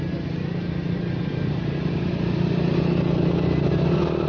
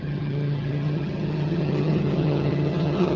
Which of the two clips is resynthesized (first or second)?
second